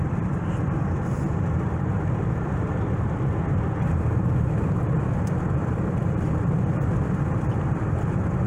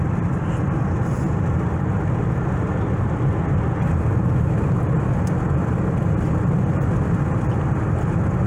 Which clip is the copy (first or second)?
first